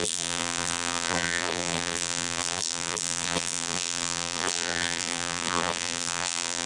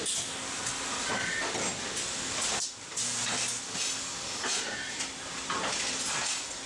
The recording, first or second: second